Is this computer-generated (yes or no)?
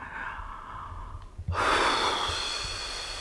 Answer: no